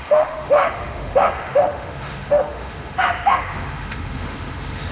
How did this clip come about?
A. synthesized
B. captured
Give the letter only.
A